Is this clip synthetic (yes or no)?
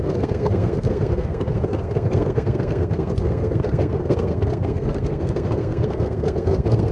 yes